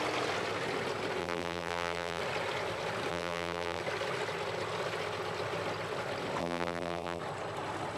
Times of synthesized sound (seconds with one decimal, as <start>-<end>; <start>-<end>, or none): 1.2-2.2; 3.1-3.8; 6.4-7.2